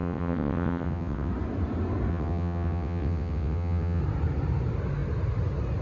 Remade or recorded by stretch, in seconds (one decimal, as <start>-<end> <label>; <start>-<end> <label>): 0.0-1.3 remade; 1.3-2.1 recorded; 2.1-4.0 remade; 4.0-5.8 recorded